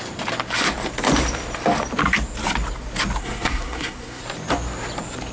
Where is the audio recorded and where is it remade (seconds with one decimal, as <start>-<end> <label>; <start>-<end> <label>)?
0.0-3.2 recorded; 3.2-4.2 remade; 4.2-5.3 recorded